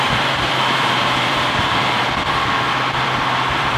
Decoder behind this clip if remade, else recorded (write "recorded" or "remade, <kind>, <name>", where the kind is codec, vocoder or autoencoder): remade, vocoder, BigVGAN v2